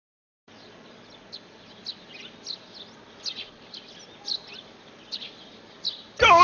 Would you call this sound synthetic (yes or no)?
no